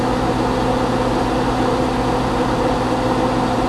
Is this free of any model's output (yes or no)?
yes